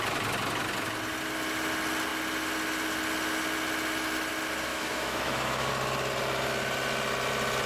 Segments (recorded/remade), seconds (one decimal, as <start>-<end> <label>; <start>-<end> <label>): 0.0-4.7 recorded; 4.7-5.7 remade; 5.7-7.7 recorded